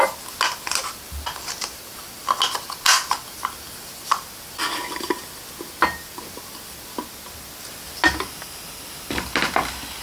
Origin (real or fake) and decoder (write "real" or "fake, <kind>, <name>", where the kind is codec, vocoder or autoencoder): real